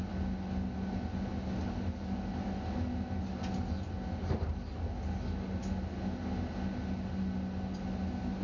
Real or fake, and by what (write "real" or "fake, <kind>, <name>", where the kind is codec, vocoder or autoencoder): real